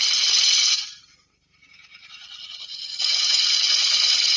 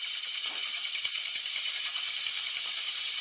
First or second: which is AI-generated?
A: second